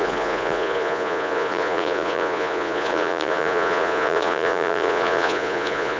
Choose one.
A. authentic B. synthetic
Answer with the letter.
B